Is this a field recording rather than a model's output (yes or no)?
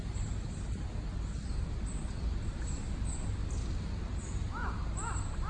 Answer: yes